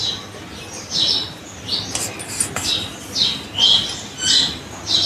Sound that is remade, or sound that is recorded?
recorded